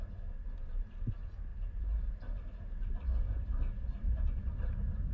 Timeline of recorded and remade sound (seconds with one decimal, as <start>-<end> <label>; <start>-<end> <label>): 0.0-3.8 recorded; 3.8-5.1 remade